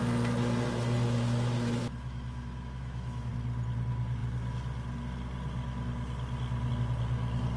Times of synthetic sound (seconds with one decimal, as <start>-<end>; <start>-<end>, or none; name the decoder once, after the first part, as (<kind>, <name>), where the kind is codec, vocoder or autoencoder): 1.8-3.3 (autoencoder, DAC-VAE)